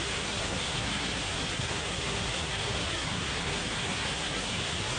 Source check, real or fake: fake